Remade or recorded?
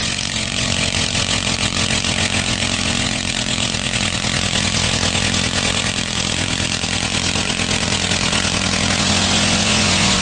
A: remade